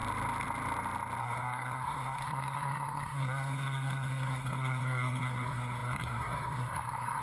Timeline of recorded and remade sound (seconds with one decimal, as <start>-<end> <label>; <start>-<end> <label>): 0.0-1.2 recorded; 1.2-7.2 remade